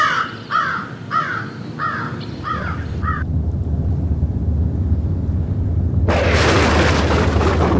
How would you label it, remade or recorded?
recorded